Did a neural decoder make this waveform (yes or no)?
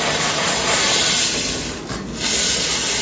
no